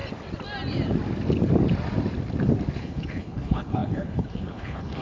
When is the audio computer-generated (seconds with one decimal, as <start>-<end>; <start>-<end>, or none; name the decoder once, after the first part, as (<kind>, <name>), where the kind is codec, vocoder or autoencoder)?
2.8-5.0 (codec, HILCodec)